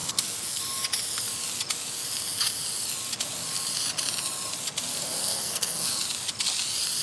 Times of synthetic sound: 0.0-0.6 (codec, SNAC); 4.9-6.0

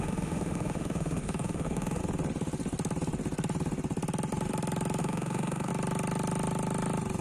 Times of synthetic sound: 0.0-2.0 (autoencoder, DAC-VAE); 5.0-5.7

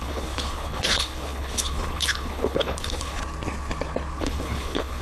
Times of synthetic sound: 0.0-3.2 (codec, HILCodec); 4.2-5.0